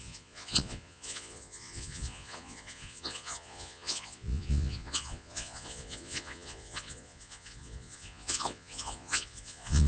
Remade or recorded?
remade